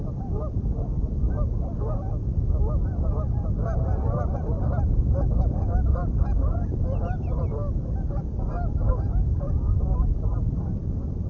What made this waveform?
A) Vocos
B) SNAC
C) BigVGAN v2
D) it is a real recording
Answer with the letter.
D